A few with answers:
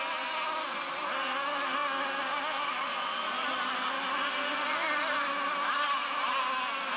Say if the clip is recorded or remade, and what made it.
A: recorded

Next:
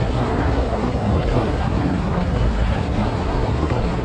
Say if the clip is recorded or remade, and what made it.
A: remade, codec, SNAC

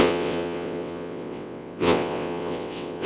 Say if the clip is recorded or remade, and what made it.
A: remade, vocoder, WaveNeXt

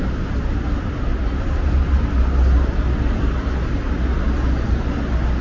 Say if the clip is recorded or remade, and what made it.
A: recorded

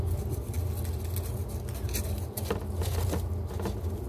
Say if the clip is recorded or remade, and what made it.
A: recorded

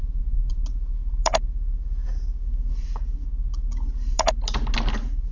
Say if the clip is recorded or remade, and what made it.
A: recorded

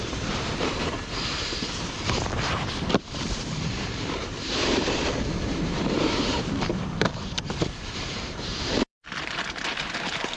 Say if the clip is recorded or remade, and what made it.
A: remade, vocoder, BigVGAN v2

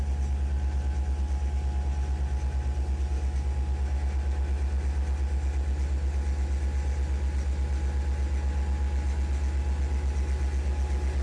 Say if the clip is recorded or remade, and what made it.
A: recorded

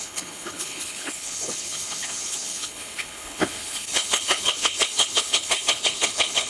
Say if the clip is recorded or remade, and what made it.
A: remade, codec, HILCodec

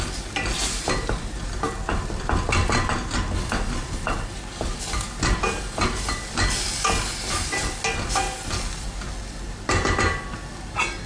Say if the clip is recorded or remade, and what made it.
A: recorded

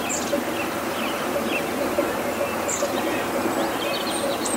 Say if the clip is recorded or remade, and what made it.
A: recorded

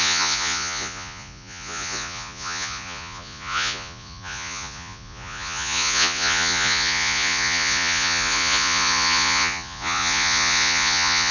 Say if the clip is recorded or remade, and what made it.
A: remade, vocoder, Vocos